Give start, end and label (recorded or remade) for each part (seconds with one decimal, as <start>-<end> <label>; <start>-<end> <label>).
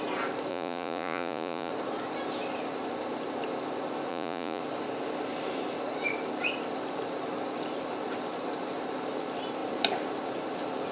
0.0-0.5 recorded; 0.5-1.7 remade; 1.7-4.1 recorded; 4.1-4.6 remade; 4.6-10.9 recorded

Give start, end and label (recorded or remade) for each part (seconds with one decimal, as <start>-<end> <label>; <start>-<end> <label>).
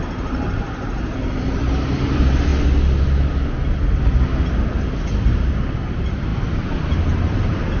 0.0-2.5 remade; 2.5-5.3 recorded; 5.3-7.8 remade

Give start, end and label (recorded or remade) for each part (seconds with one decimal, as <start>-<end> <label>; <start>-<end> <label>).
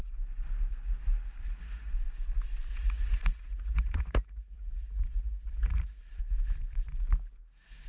0.0-1.4 recorded; 1.4-1.9 remade; 1.9-2.7 recorded; 2.7-6.2 remade; 6.2-7.9 recorded